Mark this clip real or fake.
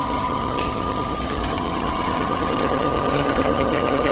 fake